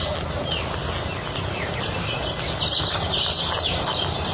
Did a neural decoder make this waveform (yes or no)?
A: no